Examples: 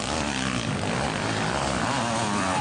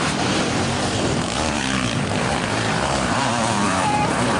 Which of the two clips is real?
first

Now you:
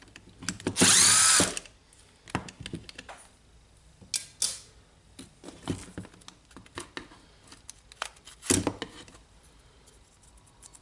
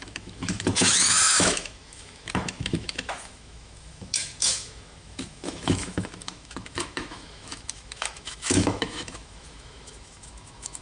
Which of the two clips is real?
first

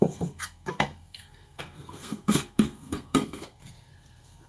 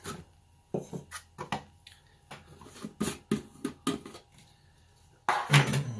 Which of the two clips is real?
second